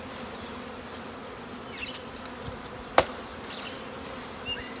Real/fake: real